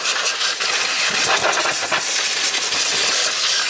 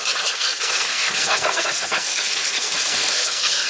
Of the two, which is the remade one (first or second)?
second